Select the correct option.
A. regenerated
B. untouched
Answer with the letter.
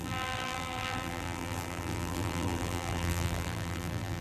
A